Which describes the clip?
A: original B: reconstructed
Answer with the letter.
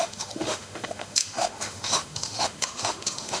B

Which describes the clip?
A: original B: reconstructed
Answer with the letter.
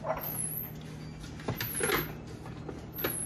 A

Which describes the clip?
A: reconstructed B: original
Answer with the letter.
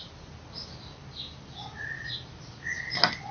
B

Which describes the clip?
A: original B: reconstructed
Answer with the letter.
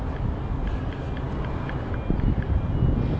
A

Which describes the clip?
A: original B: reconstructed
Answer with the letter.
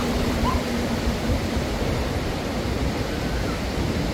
B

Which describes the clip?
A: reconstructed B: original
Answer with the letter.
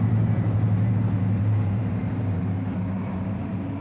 A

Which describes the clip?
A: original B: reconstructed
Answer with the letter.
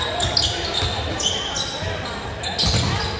A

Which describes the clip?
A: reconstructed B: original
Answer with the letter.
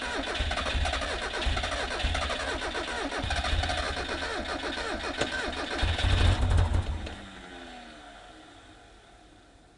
B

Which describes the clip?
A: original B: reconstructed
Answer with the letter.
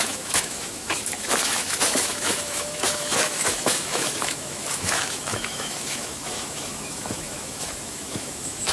B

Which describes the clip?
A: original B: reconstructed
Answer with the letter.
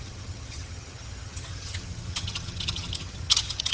B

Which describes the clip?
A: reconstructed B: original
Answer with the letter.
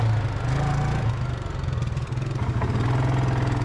B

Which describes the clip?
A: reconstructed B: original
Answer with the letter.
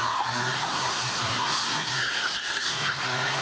A